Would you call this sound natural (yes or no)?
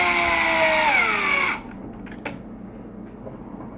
yes